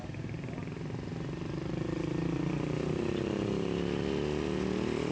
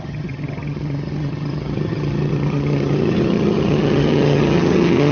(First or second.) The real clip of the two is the first